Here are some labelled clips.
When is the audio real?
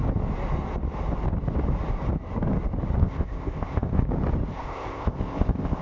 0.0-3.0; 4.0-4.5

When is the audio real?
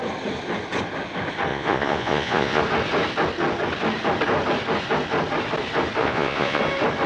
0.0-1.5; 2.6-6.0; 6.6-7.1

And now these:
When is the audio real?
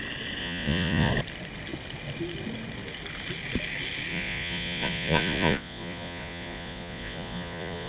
0.0-0.4; 1.1-4.1